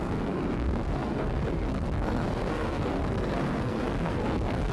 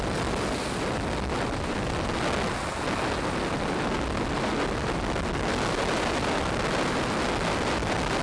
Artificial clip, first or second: first